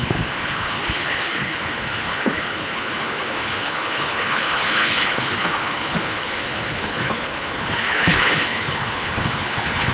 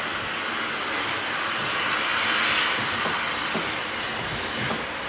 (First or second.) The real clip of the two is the second